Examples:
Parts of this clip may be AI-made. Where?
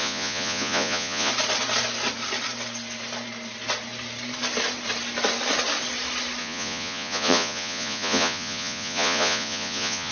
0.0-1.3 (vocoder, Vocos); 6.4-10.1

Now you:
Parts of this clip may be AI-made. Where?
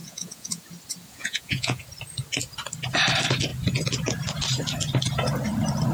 0.0-0.6 (vocoder, Vocos); 1.1-1.8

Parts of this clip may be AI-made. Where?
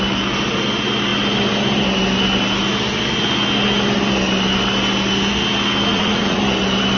5.9-6.4 (vocoder, Vocos)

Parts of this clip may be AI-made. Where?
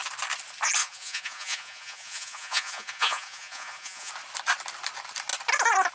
0.8-4.1 (vocoder, Vocos)